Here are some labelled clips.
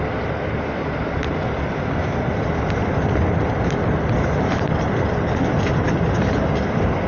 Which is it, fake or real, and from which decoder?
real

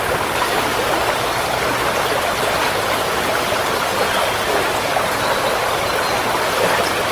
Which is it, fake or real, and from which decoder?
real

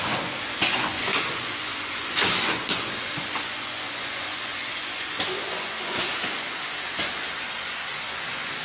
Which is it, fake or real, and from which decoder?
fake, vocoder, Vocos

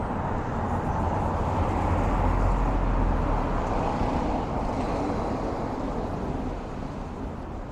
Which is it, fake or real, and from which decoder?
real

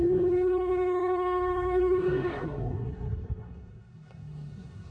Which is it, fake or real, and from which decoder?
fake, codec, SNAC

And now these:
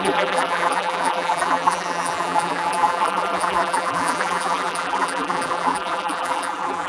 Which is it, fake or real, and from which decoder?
fake, vocoder, BigVGAN v2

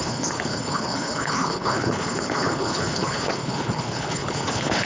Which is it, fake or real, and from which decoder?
fake, codec, HILCodec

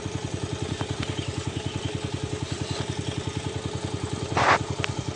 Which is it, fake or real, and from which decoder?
real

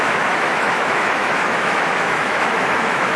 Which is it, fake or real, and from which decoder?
fake, autoencoder, DAC-VAE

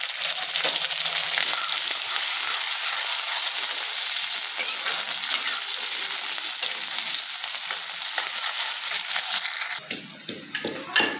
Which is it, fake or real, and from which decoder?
real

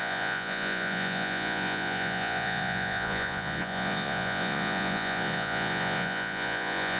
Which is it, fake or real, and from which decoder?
fake, vocoder, Vocos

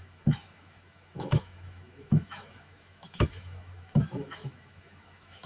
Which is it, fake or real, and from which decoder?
fake, autoencoder, DAC-VAE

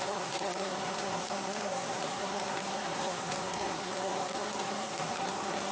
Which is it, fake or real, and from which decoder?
fake, codec, SNAC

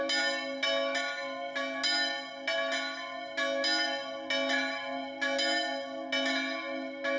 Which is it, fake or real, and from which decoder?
real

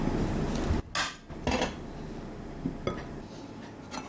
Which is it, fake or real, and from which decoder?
real